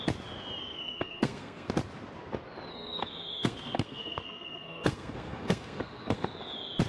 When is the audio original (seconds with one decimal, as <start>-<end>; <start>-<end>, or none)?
0.0-0.6; 1.7-2.7; 6.3-6.9